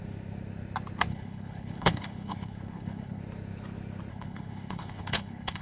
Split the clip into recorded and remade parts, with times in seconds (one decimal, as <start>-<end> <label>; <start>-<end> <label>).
0.0-1.1 recorded; 1.1-3.2 remade; 3.2-4.1 recorded; 4.1-5.6 remade